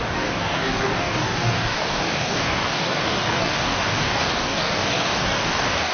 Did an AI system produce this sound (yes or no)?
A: yes